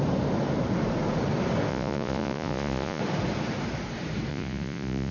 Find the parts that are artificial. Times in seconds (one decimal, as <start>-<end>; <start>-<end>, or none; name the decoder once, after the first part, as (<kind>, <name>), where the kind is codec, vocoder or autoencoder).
1.7-3.0 (vocoder, Vocos); 4.3-5.1